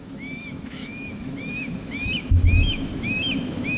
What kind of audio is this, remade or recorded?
remade